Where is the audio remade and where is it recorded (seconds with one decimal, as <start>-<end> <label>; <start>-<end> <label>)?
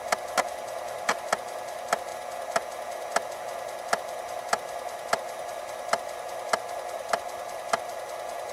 0.0-8.5 recorded